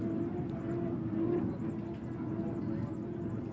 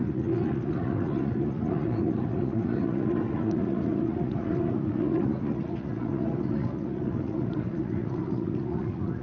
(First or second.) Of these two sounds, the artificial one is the second